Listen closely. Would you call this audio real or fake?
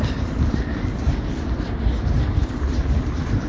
real